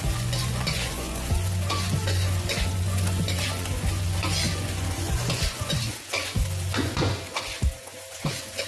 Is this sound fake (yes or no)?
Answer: yes